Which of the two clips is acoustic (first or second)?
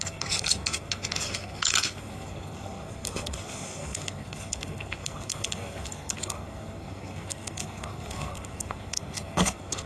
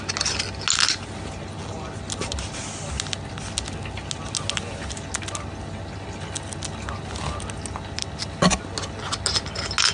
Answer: second